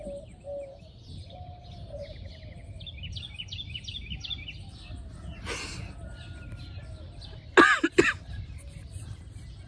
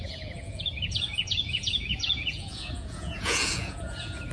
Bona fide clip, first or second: first